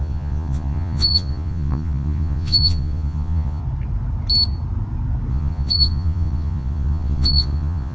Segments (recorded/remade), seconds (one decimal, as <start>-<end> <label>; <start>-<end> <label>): 0.0-3.6 remade; 3.6-5.3 recorded; 5.3-7.9 remade